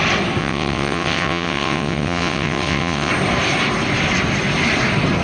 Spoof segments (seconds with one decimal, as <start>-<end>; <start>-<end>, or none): 0.4-3.1

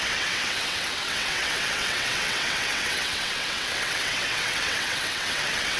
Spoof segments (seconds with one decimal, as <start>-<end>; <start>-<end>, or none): 0.0-5.8